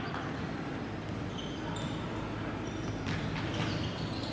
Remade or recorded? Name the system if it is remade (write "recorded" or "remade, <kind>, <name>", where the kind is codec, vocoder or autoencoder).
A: recorded